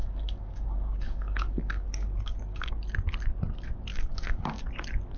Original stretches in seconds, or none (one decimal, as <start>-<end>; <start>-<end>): 2.7-3.9; 4.6-5.2